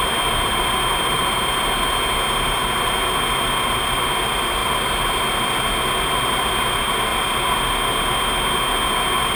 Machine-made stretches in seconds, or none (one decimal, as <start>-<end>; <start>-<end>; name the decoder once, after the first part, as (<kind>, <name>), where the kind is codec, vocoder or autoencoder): none